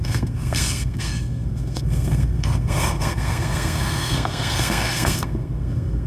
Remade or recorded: remade